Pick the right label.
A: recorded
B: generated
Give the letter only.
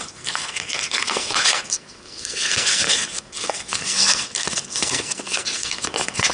B